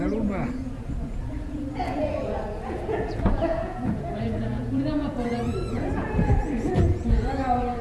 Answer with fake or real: fake